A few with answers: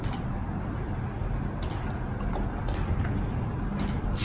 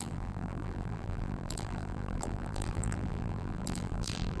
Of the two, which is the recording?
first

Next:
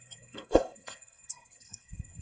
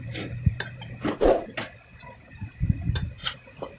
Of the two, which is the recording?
second